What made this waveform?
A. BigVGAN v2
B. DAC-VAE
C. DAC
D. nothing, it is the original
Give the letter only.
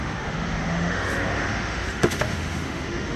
B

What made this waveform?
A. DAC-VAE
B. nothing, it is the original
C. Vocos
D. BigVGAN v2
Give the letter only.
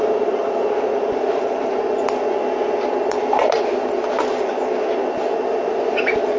B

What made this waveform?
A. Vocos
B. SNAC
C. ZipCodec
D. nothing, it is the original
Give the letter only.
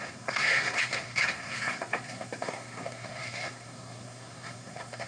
B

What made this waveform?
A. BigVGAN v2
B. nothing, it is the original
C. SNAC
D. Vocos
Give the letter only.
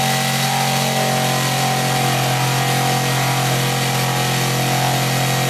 B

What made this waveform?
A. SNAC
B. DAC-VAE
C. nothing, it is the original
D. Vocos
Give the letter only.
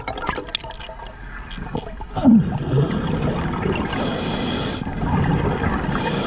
C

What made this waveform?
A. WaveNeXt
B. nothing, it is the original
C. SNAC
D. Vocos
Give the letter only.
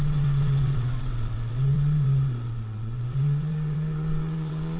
A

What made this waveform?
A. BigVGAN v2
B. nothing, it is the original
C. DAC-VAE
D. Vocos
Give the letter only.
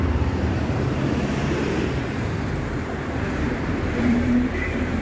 A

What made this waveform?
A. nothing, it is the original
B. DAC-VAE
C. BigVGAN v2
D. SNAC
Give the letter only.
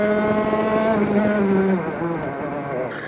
A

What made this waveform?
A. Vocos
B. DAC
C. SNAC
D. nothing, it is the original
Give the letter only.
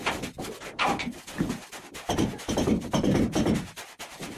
D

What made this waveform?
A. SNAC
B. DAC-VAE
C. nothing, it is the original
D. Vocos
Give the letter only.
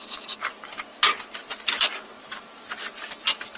C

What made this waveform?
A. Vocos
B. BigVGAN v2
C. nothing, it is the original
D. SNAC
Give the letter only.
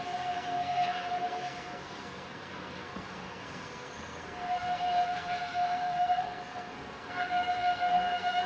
D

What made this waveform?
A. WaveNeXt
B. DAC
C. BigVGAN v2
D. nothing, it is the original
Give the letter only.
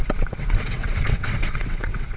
A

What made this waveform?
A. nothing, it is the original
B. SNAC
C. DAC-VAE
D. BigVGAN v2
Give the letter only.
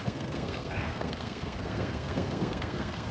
B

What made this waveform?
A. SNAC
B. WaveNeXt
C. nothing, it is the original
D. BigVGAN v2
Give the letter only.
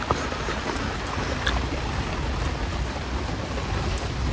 C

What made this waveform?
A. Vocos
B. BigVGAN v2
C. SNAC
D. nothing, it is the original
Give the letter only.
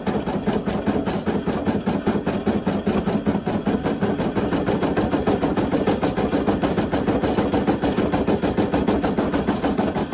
D